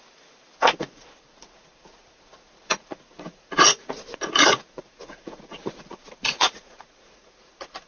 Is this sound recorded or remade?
remade